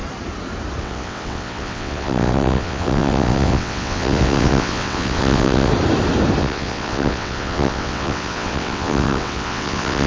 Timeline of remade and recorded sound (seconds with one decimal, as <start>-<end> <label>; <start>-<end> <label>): 0.0-0.8 recorded; 0.8-5.7 remade; 5.7-6.4 recorded; 6.4-10.1 remade